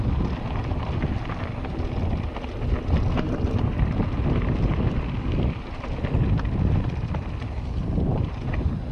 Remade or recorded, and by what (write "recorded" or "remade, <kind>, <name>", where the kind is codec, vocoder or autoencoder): recorded